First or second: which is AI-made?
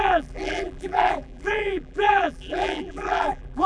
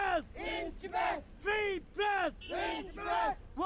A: first